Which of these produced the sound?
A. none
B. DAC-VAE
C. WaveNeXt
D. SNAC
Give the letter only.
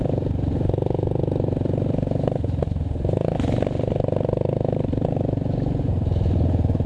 A